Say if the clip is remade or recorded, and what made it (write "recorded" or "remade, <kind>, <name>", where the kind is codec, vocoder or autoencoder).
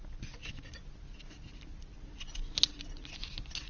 recorded